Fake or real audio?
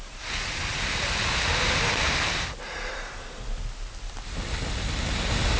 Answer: real